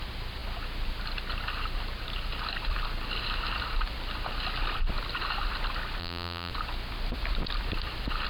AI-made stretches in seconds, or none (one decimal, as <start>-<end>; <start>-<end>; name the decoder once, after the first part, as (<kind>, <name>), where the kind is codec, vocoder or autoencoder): 6.0-6.5 (vocoder, BigVGAN v2)